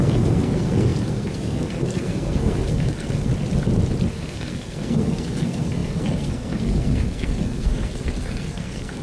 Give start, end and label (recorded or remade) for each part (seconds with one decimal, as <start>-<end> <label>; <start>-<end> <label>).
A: 0.0-3.3 remade; 3.3-4.1 recorded; 4.1-9.0 remade